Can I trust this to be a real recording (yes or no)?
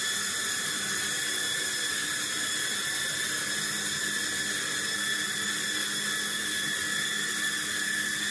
yes